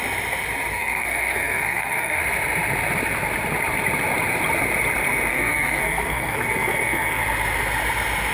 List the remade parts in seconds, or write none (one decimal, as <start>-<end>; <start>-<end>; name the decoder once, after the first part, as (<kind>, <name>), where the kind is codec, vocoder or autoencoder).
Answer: 0.7-2.2 (codec, SNAC); 5.3-7.2